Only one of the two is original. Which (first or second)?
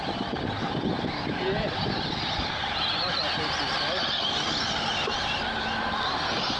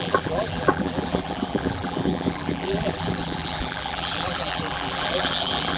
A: first